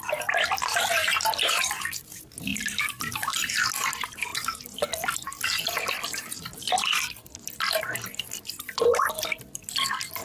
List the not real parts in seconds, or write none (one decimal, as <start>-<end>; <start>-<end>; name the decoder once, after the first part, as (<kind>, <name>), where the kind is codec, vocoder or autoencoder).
1.0-1.8 (vocoder, BigVGAN v2); 2.5-3.5